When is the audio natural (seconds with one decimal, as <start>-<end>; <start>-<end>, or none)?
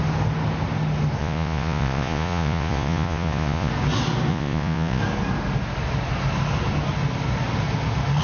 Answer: 0.0-1.2; 3.7-4.3; 5.0-8.2